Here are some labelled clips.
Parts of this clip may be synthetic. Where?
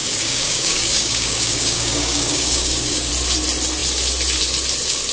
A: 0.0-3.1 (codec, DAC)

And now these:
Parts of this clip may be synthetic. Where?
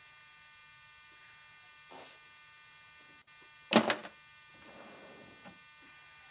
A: none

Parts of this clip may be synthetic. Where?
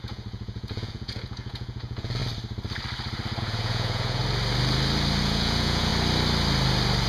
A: 0.0-2.2 (vocoder, Vocos); 3.4-4.2; 5.2-5.9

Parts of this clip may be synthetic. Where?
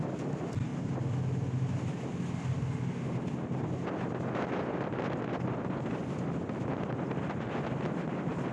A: 0.0-0.7 (vocoder, BigVGAN v2); 5.0-6.0; 6.9-8.5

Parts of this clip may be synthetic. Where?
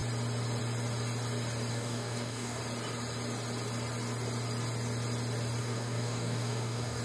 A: 1.7-2.6 (codec, DAC); 5.6-7.0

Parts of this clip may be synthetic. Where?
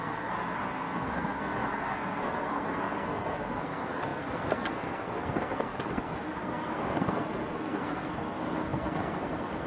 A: 0.0-9.7 (codec, SNAC)